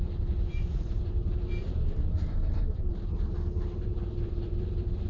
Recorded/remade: remade